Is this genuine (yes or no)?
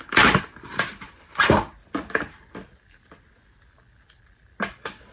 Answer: yes